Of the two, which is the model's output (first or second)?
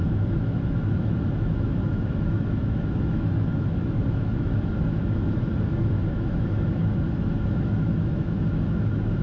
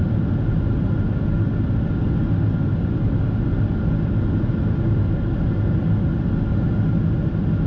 first